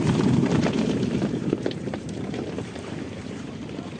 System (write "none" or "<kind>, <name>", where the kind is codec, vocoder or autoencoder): vocoder, BigVGAN v2